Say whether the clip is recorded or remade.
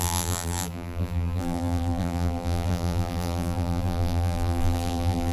remade